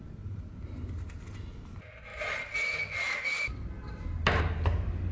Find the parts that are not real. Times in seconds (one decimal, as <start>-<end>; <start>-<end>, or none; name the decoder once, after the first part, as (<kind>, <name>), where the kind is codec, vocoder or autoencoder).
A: none